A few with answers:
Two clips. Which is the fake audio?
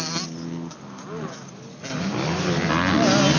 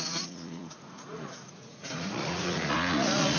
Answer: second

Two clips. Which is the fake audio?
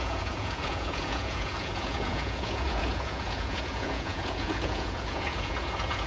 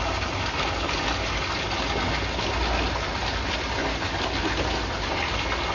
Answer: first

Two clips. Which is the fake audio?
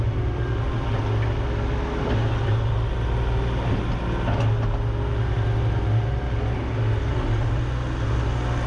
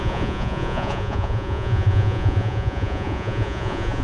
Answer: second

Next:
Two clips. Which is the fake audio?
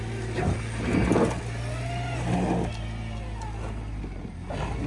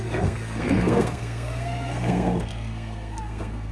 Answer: second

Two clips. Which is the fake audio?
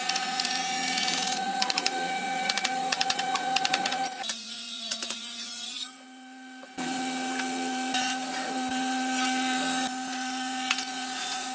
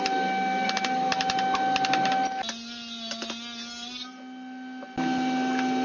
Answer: first